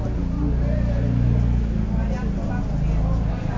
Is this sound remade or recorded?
recorded